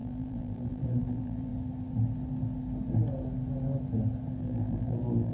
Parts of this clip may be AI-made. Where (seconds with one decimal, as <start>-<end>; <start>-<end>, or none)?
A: 0.0-1.5; 4.4-5.3